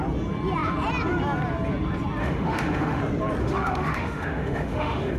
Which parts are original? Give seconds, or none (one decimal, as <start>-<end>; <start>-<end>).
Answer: 0.0-2.2; 3.0-3.4